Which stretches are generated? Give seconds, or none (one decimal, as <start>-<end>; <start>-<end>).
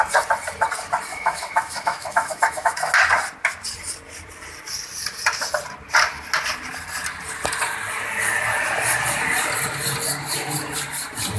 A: 1.1-2.9